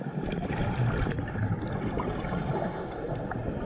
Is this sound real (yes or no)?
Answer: yes